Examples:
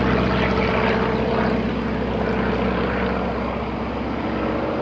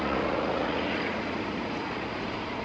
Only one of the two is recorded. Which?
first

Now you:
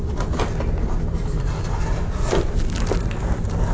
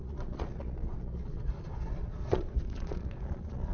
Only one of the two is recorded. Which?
first